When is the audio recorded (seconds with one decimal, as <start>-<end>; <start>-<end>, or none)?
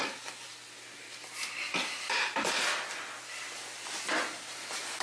0.0-0.5; 3.5-5.0